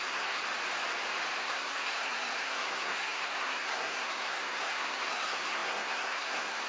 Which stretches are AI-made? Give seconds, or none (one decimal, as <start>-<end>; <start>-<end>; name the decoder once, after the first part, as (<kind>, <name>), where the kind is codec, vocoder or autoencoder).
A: 0.0-0.4 (codec, SNAC); 1.4-6.7